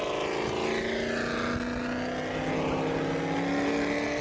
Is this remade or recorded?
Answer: recorded